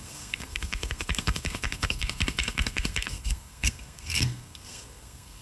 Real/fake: fake